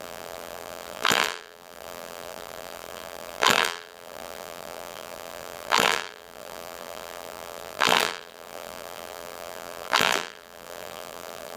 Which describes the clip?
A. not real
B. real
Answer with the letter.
A